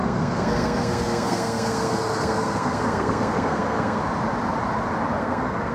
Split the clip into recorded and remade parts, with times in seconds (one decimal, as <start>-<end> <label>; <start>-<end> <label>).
0.0-4.0 remade; 4.0-5.2 recorded; 5.2-5.7 remade